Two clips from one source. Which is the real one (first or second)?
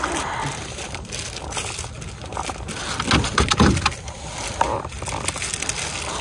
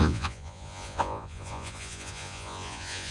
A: first